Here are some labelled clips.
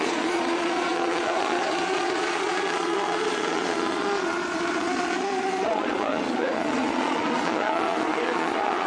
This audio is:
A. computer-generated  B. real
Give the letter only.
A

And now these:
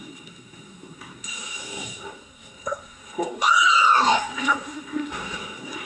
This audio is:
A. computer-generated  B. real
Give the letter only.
A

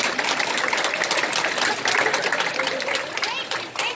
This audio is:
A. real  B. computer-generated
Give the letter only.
A